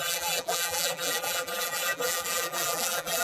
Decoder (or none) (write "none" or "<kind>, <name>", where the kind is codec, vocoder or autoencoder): vocoder, BigVGAN v2